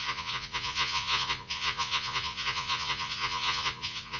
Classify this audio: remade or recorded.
remade